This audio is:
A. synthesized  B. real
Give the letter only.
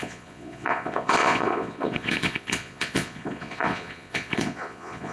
A